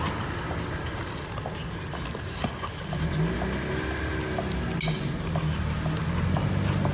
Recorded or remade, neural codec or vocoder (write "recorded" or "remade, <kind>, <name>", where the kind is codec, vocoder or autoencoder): recorded